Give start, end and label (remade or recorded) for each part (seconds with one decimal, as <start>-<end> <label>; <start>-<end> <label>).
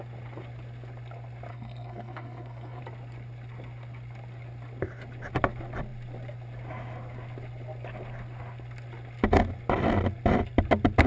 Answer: 0.0-1.5 recorded; 1.5-2.8 remade; 2.8-11.1 recorded